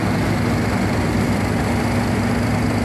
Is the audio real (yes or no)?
yes